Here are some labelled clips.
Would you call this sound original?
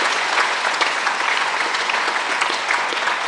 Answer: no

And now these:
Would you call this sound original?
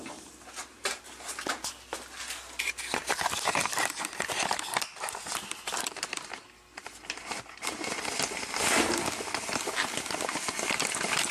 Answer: yes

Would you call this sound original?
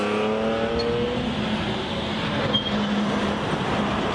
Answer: yes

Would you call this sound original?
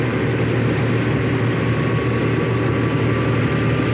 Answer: yes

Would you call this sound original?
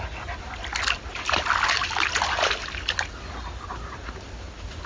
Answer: yes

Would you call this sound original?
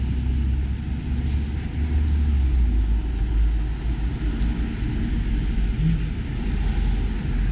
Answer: yes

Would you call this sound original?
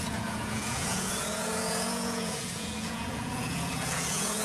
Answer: no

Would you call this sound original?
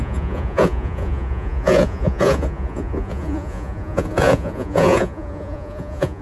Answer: no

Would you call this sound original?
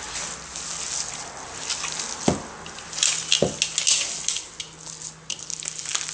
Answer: yes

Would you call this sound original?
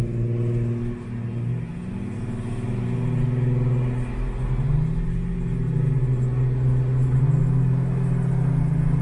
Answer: yes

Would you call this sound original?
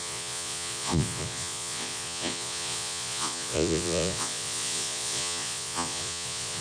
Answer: no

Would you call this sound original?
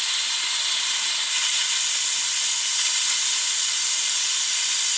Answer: yes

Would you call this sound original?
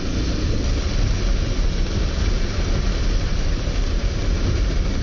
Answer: yes